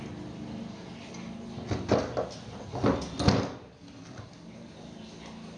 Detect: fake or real real